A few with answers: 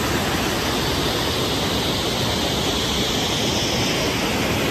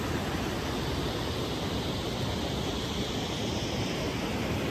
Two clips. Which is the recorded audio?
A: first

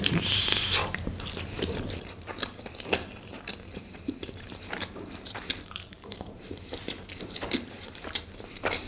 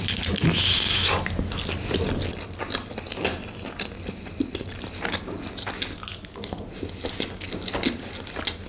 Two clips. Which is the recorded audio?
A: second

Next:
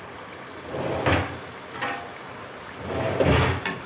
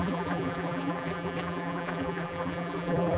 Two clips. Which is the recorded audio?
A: first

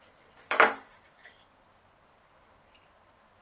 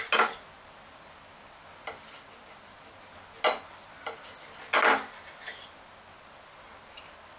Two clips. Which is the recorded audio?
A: second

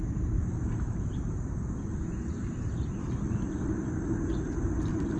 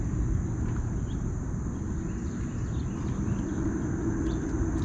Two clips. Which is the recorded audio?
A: second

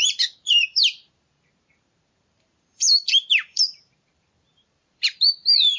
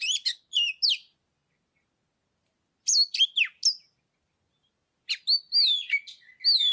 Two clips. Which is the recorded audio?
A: second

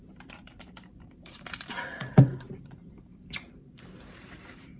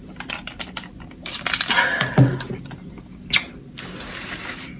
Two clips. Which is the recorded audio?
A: second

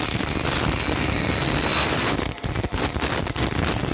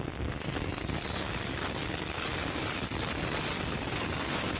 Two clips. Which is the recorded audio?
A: first